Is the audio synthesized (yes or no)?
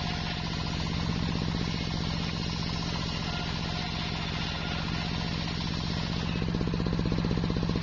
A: no